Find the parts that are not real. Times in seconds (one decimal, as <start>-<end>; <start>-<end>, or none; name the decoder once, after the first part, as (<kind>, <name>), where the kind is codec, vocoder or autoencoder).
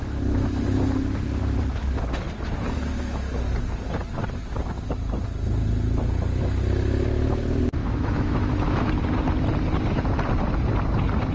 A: 7.8-8.9 (autoencoder, DAC-VAE)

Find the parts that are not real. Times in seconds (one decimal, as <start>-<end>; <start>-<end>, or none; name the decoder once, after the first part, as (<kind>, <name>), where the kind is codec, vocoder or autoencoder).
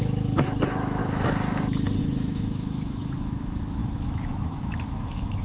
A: 0.0-1.0 (autoencoder, DAC-VAE); 2.0-5.4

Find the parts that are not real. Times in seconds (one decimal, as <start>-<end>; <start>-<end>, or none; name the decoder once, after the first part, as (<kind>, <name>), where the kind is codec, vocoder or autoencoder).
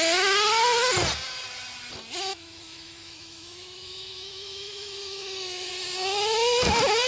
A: 2.3-5.7 (autoencoder, DAC-VAE)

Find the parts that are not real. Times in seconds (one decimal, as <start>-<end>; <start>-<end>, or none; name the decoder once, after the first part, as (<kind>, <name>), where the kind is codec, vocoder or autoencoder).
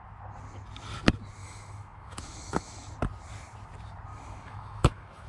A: 1.4-2.9 (autoencoder, DAC-VAE); 4.1-5.3